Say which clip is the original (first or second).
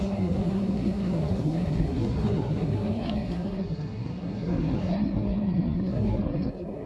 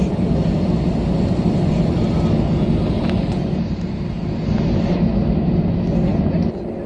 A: second